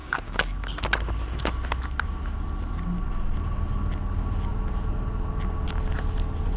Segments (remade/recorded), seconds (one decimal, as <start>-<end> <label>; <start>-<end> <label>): 0.0-0.8 remade; 0.8-6.6 recorded